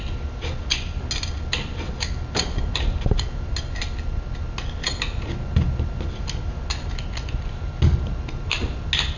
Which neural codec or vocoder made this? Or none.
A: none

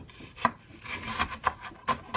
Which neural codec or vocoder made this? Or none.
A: vocoder, BigVGAN v2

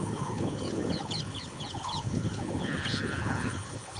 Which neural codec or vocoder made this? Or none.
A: codec, HILCodec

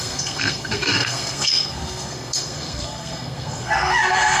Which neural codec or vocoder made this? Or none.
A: codec, SNAC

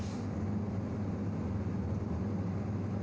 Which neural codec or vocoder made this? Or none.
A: none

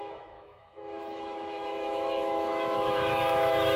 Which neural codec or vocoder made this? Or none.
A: autoencoder, DAC-VAE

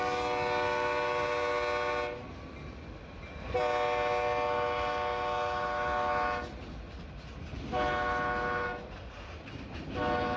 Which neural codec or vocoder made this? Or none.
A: none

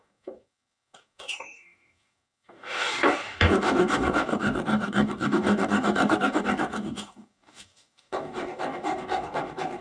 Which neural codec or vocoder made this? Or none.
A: codec, DAC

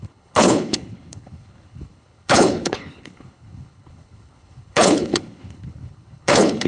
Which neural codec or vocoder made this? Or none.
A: codec, HILCodec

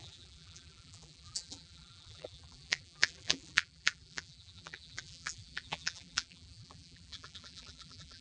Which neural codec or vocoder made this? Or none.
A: vocoder, BigVGAN v2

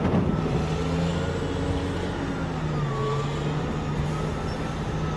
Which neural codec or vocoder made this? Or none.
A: none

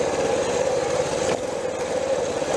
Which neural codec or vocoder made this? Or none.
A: none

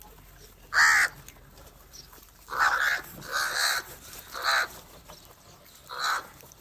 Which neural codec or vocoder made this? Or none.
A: none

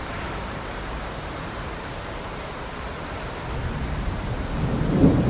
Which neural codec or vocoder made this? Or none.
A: vocoder, BigVGAN v2